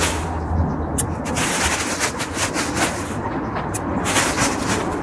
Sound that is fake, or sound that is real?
real